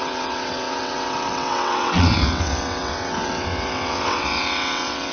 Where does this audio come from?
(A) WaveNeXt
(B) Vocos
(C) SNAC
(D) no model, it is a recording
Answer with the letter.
A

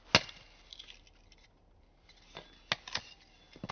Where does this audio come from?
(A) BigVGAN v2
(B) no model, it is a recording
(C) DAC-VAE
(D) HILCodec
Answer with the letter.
B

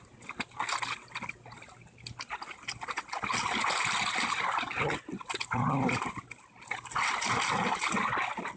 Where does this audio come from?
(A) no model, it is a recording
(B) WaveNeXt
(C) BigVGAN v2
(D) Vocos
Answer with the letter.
A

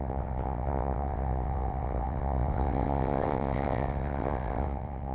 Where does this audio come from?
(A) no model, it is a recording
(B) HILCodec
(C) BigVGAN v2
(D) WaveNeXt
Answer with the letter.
D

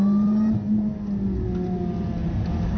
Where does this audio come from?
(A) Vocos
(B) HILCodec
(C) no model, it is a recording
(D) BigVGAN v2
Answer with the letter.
C